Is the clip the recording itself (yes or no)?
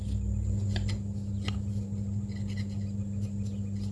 yes